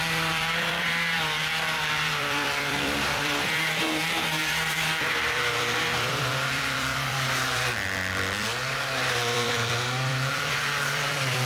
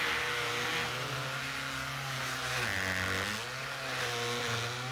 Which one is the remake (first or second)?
first